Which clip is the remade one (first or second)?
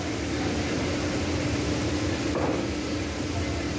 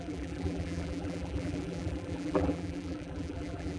second